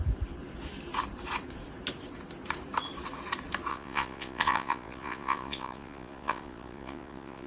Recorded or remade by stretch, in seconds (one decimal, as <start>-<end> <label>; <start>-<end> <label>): 0.0-3.7 recorded; 3.7-7.5 remade